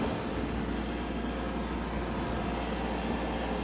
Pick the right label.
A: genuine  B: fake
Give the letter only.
A